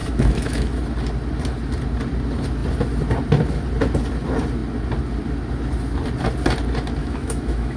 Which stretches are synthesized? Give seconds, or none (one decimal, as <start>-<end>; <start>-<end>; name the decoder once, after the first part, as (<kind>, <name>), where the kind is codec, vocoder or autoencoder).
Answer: 0.0-0.8 (autoencoder, DAC-VAE); 7.0-7.8